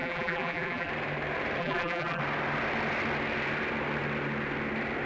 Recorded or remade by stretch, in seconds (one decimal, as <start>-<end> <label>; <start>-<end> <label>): 0.0-0.9 remade; 0.9-1.6 recorded; 1.6-2.2 remade; 2.2-5.1 recorded